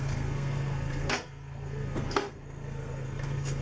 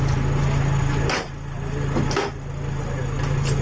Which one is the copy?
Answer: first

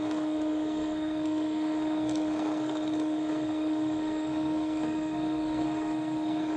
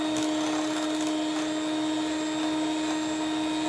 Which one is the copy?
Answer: first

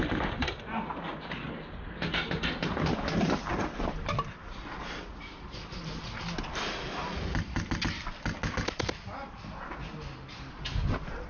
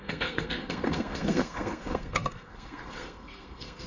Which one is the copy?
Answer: second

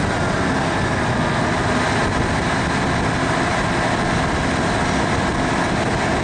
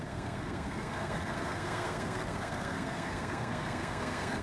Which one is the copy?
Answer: second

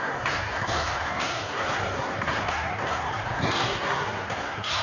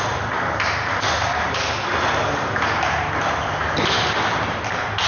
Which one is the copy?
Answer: first